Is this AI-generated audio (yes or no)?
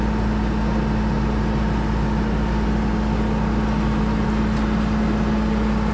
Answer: no